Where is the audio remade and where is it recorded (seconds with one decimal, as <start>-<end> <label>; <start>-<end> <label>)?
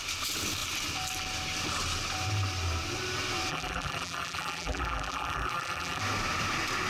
0.0-3.5 recorded; 3.5-6.0 remade; 6.0-6.9 recorded